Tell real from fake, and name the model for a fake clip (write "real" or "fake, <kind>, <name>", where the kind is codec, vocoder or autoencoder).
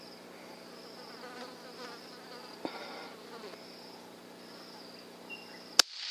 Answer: real